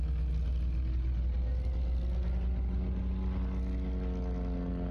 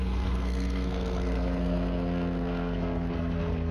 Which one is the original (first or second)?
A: first